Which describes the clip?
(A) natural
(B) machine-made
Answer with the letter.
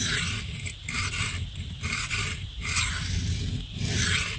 A